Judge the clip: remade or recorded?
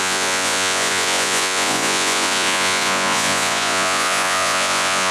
remade